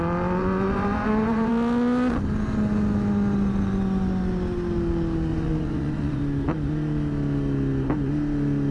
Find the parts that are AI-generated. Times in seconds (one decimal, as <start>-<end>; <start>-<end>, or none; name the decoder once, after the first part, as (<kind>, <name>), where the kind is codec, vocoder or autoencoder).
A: 0.4-1.5 (vocoder, Vocos); 5.3-6.2